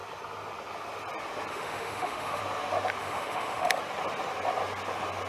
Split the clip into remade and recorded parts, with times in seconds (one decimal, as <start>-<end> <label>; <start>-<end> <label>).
0.0-1.5 recorded; 1.5-2.4 remade; 2.4-3.0 recorded; 3.0-3.8 remade; 3.8-5.3 recorded